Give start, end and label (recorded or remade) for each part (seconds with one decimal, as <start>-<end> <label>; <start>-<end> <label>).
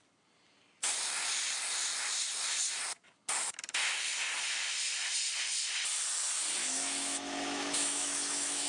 0.0-6.6 recorded; 6.6-8.7 remade